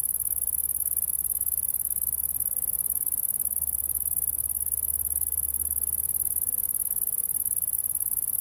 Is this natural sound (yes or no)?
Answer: yes